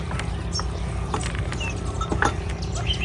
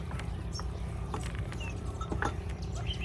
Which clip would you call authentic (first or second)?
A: first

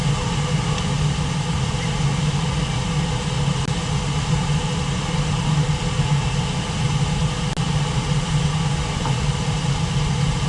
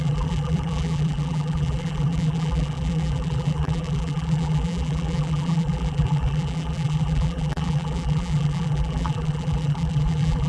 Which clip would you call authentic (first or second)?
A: first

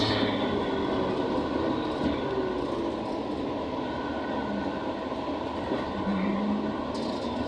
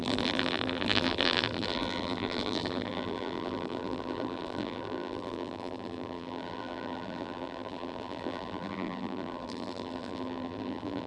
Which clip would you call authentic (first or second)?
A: first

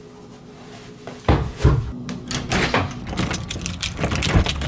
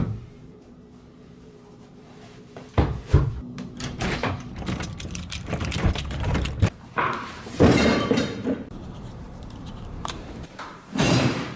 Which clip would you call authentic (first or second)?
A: first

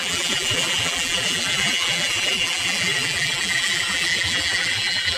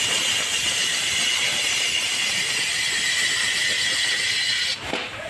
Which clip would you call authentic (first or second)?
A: second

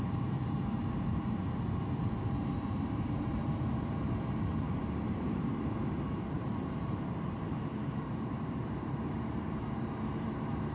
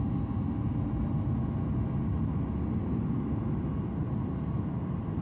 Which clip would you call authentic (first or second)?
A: second